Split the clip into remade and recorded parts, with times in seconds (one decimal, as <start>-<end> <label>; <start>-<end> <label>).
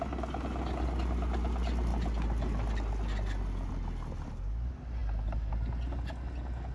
0.0-6.7 recorded